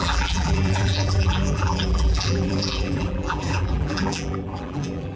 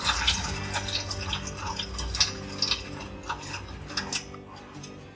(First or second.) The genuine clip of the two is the second